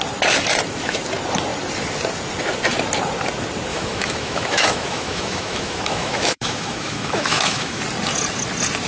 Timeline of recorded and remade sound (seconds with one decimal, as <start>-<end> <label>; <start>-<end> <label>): 0.0-3.7 recorded; 3.7-7.8 remade; 7.8-8.9 recorded